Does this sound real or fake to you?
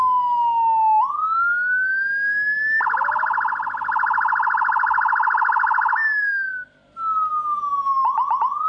real